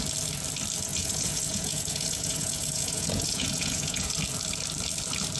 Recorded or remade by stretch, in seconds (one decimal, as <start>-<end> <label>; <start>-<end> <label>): 0.0-0.9 recorded; 0.9-4.1 remade; 4.1-5.4 recorded